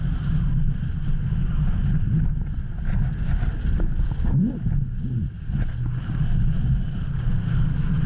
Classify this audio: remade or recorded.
recorded